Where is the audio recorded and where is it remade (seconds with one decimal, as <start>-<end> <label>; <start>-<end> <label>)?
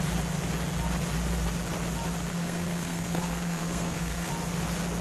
0.0-2.3 recorded; 2.3-4.3 remade; 4.3-5.0 recorded